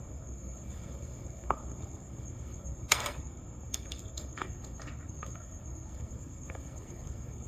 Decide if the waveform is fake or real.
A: fake